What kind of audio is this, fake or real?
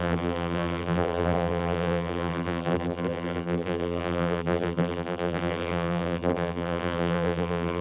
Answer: fake